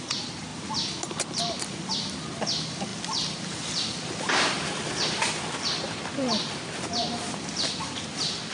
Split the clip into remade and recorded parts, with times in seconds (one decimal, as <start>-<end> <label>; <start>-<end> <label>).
0.0-2.9 recorded; 2.9-7.8 remade; 7.8-8.5 recorded